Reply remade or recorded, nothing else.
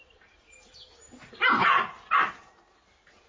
recorded